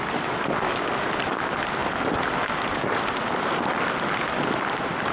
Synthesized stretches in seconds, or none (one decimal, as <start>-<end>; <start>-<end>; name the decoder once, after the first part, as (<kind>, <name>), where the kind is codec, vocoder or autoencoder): none